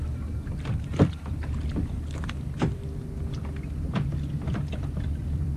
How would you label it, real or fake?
fake